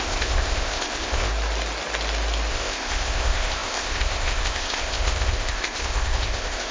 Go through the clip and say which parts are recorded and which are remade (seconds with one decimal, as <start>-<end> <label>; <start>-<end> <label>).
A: 0.0-1.3 remade; 1.3-2.5 recorded; 2.5-6.7 remade